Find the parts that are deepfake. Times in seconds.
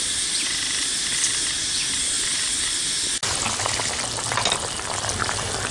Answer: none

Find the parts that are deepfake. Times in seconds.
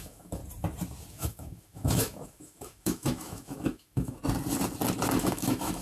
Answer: 0.0-0.4 (autoencoder, DAC-VAE); 1.1-4.2; 5.2-5.8